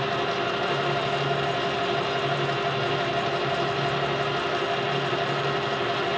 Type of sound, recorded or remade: recorded